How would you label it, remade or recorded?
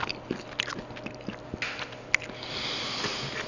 recorded